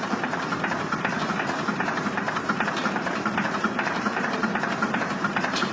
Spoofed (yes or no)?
yes